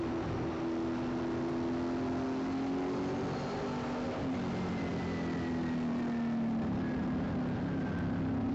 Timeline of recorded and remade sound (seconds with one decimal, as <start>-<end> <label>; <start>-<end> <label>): 0.0-8.5 recorded